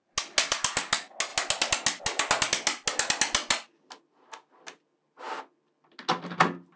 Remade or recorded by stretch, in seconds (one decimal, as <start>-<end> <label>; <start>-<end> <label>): 0.0-6.8 recorded